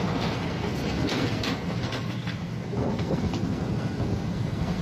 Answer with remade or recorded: remade